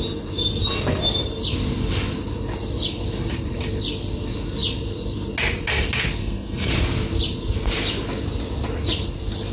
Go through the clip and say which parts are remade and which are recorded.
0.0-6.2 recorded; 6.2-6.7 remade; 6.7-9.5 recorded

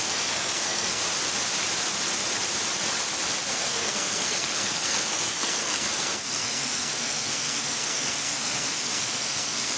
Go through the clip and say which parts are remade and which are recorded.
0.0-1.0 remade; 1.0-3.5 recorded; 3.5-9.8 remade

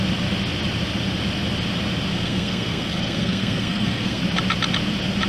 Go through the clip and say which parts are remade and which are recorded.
0.0-2.1 recorded; 2.1-4.2 remade; 4.2-5.3 recorded

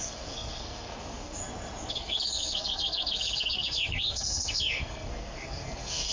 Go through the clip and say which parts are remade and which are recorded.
0.0-1.4 remade; 1.4-1.9 recorded; 1.9-6.1 remade